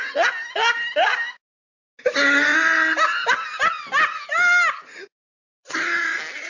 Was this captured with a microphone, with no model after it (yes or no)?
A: yes